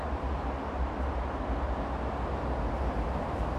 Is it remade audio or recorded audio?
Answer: recorded